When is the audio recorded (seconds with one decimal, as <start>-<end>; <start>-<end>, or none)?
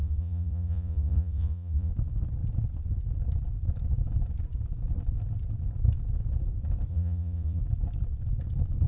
1.9-6.9; 7.6-8.9